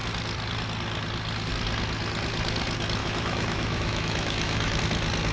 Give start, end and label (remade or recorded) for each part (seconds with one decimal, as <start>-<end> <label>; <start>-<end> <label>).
0.0-3.0 recorded; 3.0-4.8 remade; 4.8-5.3 recorded